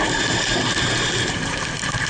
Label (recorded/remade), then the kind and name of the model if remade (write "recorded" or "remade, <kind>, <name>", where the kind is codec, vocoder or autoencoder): remade, vocoder, BigVGAN v2